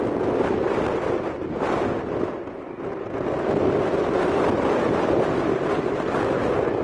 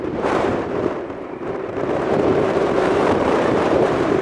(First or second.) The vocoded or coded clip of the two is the second